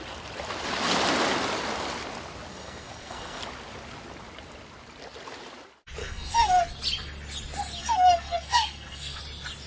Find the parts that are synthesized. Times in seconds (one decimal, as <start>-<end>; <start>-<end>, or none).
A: 2.5-3.4; 6.0-6.6; 7.8-9.2